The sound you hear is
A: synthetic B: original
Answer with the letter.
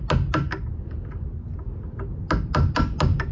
B